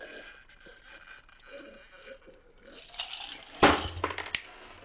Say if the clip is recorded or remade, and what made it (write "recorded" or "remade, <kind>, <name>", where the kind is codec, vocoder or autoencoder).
recorded